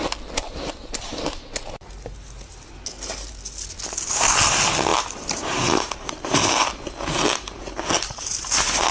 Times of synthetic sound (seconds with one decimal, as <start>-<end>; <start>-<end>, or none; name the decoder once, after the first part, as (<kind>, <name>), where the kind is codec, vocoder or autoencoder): 4.9-6.7 (vocoder, BigVGAN v2)